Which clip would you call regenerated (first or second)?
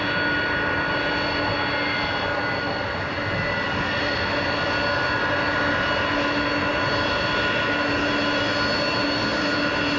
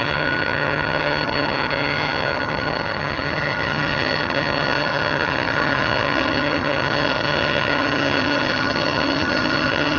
second